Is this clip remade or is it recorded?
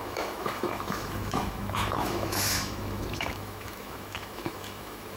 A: remade